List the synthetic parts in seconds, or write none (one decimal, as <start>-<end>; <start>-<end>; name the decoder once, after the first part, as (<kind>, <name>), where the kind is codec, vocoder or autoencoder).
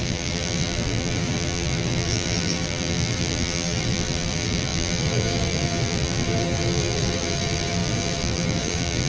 0.0-9.1 (vocoder, BigVGAN v2)